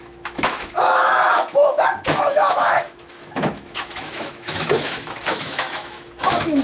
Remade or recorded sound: remade